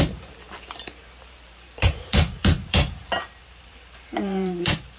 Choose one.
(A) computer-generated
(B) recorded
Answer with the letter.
A